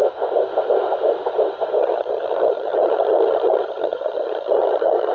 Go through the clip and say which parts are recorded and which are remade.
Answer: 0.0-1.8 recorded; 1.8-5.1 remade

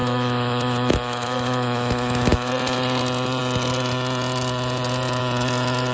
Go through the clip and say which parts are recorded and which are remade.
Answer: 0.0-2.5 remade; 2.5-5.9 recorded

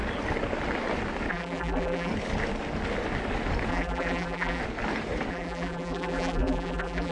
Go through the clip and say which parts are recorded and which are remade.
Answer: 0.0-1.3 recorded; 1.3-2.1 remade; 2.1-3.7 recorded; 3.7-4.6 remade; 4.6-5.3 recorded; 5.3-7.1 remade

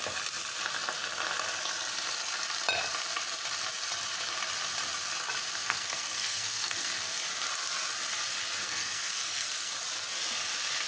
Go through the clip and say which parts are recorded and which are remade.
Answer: 0.0-5.6 recorded; 5.6-7.2 remade; 7.2-8.6 recorded; 8.6-9.7 remade; 9.7-10.9 recorded

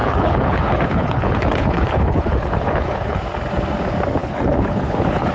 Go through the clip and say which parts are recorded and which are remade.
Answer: 0.0-3.2 remade; 3.2-4.2 recorded; 4.2-5.3 remade

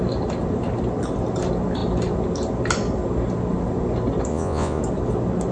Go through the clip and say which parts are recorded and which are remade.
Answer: 0.0-4.3 recorded; 4.3-4.8 remade; 4.8-5.5 recorded